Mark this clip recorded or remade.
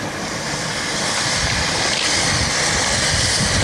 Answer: recorded